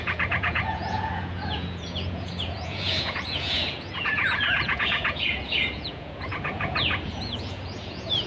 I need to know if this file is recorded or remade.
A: remade